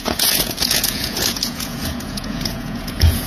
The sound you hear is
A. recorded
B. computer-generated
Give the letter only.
B